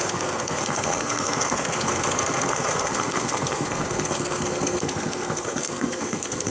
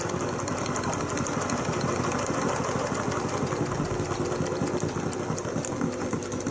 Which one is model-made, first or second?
first